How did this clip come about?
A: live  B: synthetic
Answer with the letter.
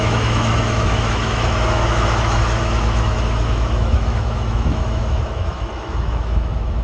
B